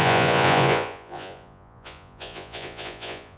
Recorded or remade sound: remade